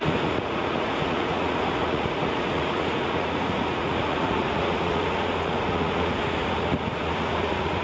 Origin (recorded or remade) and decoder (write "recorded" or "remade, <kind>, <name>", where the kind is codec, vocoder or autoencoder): remade, vocoder, Vocos